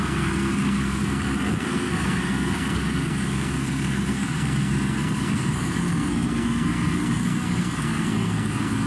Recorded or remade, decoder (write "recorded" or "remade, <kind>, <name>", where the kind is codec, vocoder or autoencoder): remade, codec, SNAC